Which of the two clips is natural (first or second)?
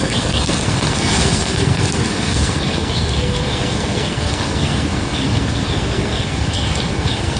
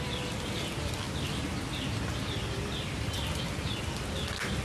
second